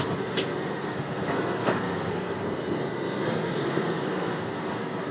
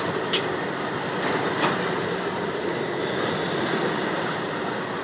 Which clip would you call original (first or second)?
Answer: second